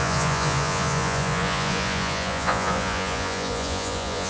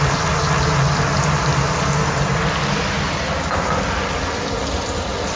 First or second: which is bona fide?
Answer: second